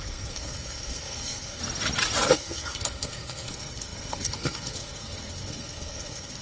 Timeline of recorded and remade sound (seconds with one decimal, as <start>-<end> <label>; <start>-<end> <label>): 0.0-1.6 remade; 1.6-2.3 recorded; 2.3-6.4 remade